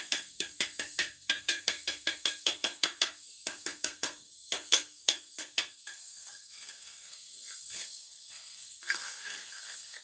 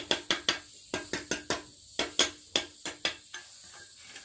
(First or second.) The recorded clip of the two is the second